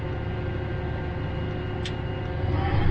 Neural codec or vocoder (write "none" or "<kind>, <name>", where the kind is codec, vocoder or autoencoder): none